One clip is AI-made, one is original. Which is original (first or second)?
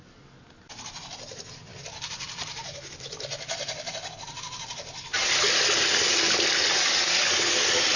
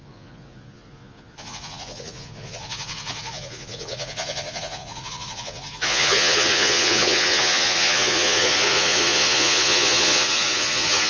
first